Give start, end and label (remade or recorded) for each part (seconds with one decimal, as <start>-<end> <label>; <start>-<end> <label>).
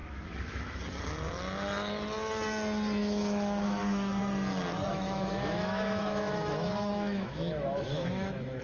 0.0-0.8 remade; 0.8-3.0 recorded; 3.0-4.2 remade; 4.2-4.9 recorded; 4.9-8.6 remade